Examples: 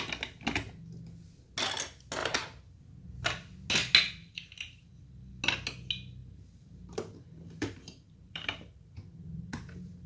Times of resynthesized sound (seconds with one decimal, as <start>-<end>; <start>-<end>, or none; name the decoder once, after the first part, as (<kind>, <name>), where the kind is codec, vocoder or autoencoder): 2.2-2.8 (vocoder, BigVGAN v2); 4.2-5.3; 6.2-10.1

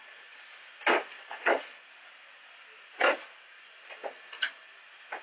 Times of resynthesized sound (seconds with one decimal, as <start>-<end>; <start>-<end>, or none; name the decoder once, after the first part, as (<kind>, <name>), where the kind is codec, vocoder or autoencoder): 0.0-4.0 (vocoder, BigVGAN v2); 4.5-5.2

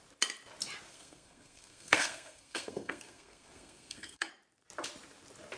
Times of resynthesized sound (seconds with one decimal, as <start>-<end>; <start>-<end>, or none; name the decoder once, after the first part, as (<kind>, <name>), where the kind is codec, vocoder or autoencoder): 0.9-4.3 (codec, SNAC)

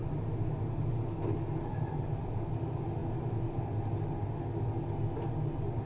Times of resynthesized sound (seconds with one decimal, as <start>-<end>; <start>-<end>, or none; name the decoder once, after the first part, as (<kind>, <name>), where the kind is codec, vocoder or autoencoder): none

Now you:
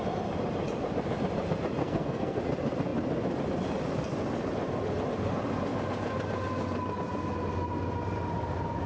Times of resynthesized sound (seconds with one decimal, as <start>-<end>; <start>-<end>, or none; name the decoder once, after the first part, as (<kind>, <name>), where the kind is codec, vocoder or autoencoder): 1.8-2.4 (codec, SNAC)